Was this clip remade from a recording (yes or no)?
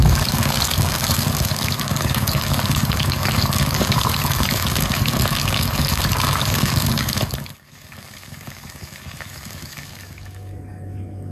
yes